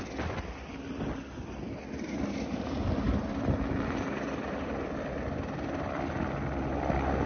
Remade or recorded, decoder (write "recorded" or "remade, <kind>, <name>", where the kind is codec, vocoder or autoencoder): recorded